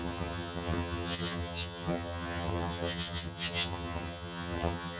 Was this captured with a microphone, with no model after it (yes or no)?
no